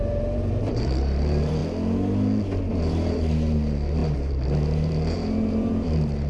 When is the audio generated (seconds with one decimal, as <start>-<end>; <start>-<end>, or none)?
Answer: 0.0-1.6; 2.7-6.3